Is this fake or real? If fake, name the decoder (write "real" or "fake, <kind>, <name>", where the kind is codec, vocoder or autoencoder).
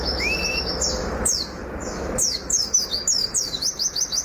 fake, autoencoder, DAC-VAE